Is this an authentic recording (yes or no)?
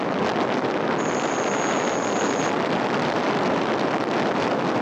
yes